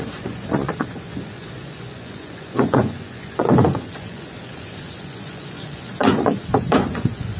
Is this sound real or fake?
fake